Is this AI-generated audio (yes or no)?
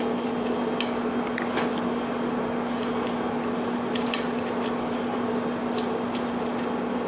no